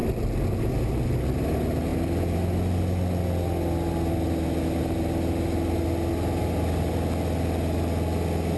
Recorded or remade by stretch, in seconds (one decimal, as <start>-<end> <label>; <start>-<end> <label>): 0.0-8.6 recorded